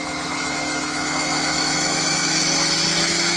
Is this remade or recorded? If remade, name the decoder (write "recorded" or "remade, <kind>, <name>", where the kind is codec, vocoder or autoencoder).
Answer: remade, autoencoder, DAC-VAE